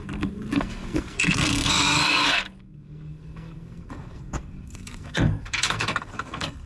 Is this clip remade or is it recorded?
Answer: remade